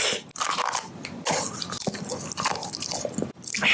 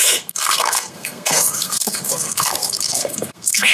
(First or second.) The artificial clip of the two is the second